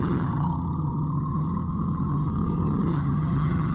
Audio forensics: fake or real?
fake